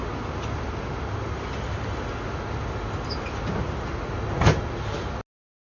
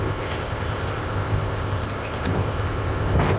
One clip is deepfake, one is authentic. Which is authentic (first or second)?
first